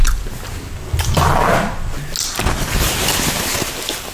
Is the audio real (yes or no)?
yes